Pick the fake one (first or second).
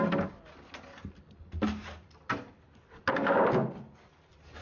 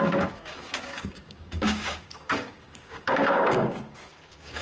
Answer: second